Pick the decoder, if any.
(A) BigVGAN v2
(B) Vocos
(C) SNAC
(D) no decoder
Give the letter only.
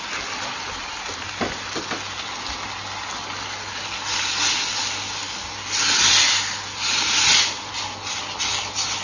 D